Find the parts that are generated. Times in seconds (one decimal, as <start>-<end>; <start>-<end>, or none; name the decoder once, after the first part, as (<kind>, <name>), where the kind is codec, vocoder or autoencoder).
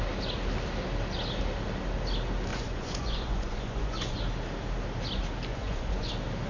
2.5-4.2 (vocoder, Vocos); 5.5-6.1